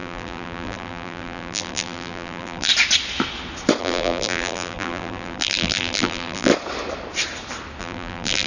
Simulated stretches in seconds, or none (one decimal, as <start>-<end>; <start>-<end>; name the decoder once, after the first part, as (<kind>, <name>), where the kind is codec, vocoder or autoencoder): 0.0-2.7 (vocoder, BigVGAN v2); 3.8-6.5; 7.8-8.5